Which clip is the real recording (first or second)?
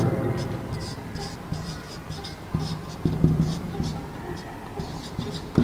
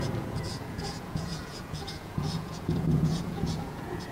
first